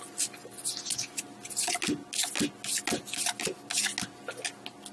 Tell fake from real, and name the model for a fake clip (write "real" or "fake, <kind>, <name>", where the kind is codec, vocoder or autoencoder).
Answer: real